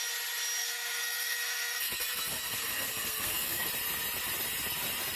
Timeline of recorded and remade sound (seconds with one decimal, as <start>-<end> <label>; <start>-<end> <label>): 0.0-0.6 recorded; 0.6-3.7 remade; 3.7-5.2 recorded